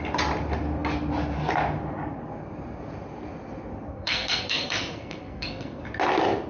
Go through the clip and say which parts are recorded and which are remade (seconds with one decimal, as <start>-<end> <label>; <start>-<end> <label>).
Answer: 0.0-3.9 recorded; 3.9-5.8 remade; 5.8-6.5 recorded